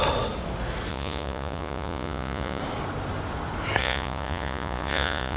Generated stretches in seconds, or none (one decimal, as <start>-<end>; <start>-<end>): 0.9-2.6; 3.8-5.4